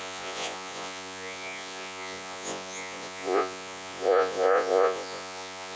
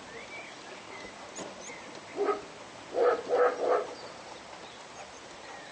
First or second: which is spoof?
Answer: first